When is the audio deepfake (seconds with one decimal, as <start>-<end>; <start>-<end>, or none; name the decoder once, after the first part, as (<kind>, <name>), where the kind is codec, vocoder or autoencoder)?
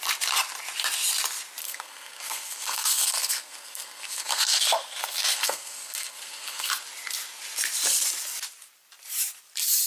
1.6-6.7 (codec, SNAC)